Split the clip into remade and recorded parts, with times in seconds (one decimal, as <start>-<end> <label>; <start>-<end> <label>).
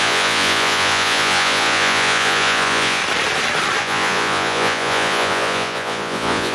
0.0-3.0 remade; 3.0-3.8 recorded; 3.8-6.5 remade